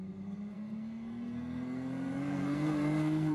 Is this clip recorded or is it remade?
remade